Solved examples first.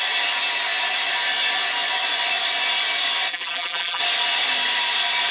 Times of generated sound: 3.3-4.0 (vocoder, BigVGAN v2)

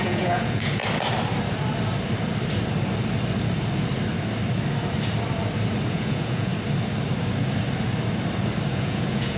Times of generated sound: 0.0-0.8 (vocoder, Vocos); 5.9-6.5; 8.7-9.4

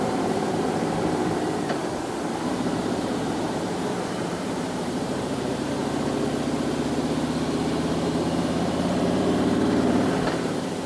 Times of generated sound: 0.0-5.8 (vocoder, BigVGAN v2); 8.0-10.9

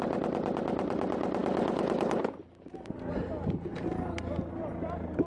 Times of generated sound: none

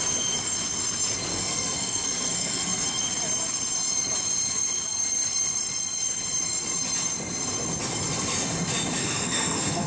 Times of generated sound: 1.3-3.0 (codec, SNAC); 9.0-9.9

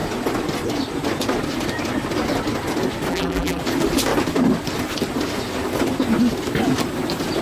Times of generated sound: 3.1-3.6 (vocoder, BigVGAN v2)

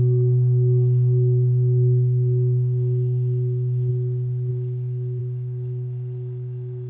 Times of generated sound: 0.0-3.9 (codec, SNAC); 4.5-6.9